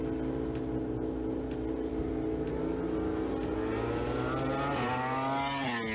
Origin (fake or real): real